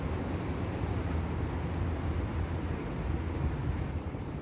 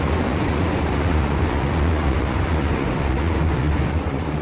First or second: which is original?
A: first